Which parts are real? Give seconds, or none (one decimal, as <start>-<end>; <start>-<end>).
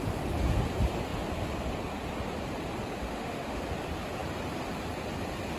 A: 0.0-3.1; 3.6-5.6